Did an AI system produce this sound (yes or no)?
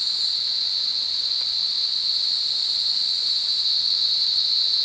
no